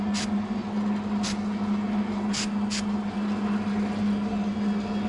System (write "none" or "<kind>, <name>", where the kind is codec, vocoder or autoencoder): none